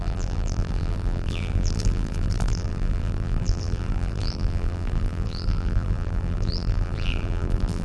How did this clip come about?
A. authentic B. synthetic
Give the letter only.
B